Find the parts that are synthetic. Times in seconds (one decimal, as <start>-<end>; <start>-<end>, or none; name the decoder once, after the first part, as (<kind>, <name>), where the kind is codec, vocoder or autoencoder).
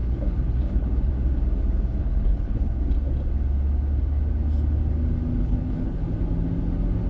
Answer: 0.0-1.1 (codec, HILCodec); 2.0-2.8; 5.4-6.0